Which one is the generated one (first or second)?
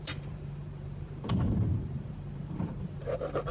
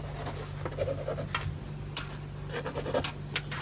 first